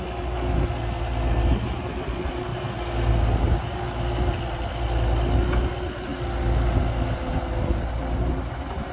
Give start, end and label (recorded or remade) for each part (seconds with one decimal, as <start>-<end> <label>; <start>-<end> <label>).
0.0-8.9 recorded